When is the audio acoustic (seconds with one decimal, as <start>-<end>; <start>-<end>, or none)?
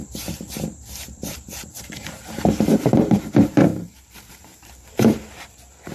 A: none